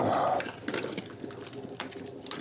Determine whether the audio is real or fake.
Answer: real